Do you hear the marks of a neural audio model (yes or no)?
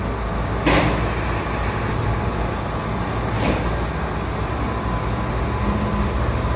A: no